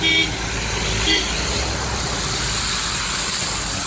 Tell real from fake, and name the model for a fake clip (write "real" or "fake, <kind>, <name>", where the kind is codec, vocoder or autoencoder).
real